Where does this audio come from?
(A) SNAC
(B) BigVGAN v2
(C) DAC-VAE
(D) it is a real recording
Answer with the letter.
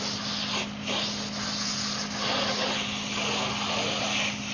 D